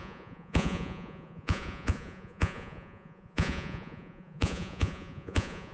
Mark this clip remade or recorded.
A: remade